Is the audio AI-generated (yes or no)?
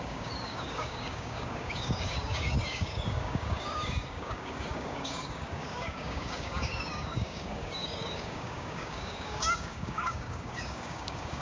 yes